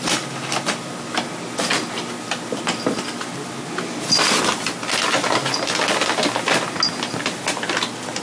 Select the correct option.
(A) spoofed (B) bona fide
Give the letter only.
B